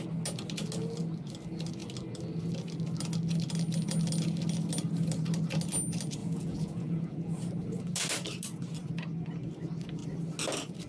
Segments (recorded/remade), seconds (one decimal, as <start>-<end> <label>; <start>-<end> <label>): 0.0-6.2 recorded; 6.2-7.4 remade; 7.4-10.9 recorded

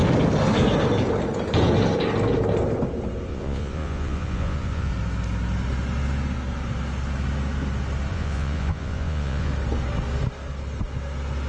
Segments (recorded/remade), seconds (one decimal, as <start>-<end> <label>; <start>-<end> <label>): 0.0-3.3 recorded; 3.3-4.9 remade; 4.9-8.1 recorded; 8.1-9.5 remade; 9.5-11.5 recorded

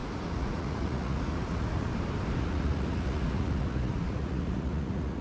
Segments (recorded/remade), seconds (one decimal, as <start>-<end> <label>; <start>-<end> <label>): 0.0-1.9 remade; 1.9-2.4 recorded; 2.4-5.2 remade